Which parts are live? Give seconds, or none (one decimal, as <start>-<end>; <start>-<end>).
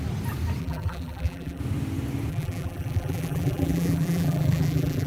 0.0-0.6; 1.6-2.3